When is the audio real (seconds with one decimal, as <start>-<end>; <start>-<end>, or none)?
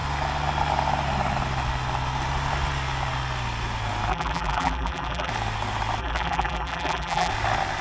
0.0-4.1; 5.3-6.0; 7.3-7.8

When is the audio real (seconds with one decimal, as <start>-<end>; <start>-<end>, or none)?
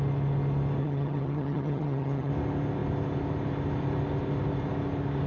0.0-0.8; 2.3-5.3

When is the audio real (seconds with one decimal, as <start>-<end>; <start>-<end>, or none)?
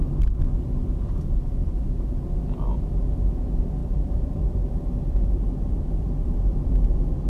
0.0-3.8